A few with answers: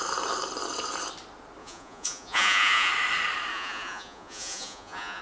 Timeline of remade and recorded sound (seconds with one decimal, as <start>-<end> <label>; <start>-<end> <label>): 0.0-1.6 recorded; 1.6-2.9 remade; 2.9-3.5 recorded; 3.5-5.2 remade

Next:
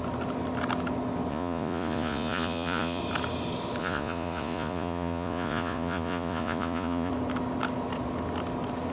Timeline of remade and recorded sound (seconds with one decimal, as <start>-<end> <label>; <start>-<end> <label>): 0.0-1.3 recorded; 1.3-3.0 remade; 3.0-3.8 recorded; 3.8-7.1 remade; 7.1-8.9 recorded

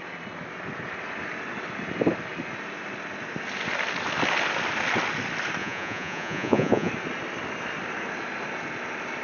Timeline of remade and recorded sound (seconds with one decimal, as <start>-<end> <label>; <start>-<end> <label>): 0.0-5.6 recorded; 5.6-6.9 remade; 6.9-9.2 recorded

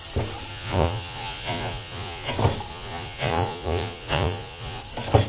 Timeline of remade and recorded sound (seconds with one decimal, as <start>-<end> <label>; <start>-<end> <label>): 0.0-0.5 recorded; 0.5-2.3 remade; 2.3-2.7 recorded; 2.7-4.8 remade; 4.8-5.3 recorded